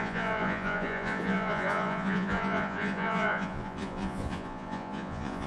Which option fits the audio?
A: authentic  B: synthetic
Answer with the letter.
B